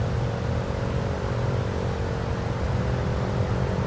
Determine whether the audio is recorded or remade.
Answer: recorded